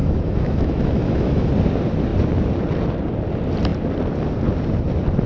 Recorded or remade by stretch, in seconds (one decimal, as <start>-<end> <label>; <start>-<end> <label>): 0.0-1.5 remade; 1.5-5.3 recorded